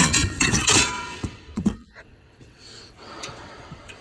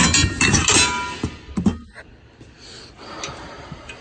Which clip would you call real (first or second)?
second